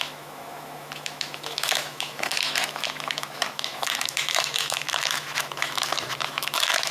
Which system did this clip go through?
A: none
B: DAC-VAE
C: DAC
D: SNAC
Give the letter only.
B